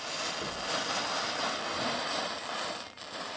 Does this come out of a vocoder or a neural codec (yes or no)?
no